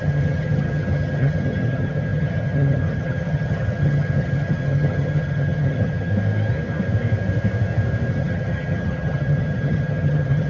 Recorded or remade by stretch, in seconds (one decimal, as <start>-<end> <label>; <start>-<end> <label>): 0.0-6.1 remade; 6.1-8.1 recorded; 8.1-10.5 remade